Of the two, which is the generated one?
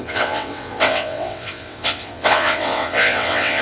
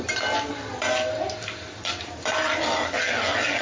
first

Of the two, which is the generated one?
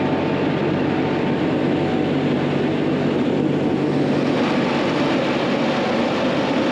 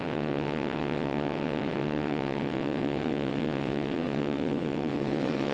second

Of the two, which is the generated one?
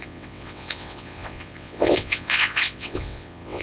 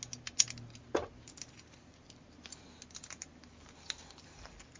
first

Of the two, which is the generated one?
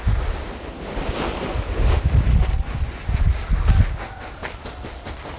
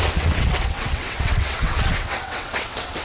second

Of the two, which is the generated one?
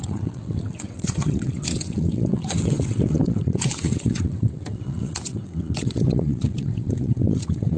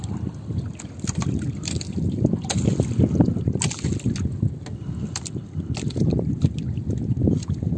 first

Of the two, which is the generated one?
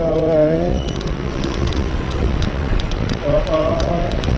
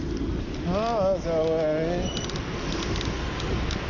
first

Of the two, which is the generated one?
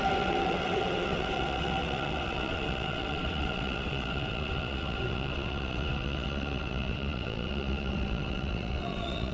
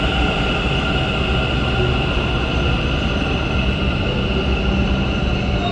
first